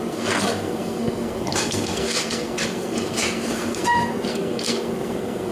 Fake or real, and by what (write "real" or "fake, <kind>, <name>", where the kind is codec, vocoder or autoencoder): fake, codec, SNAC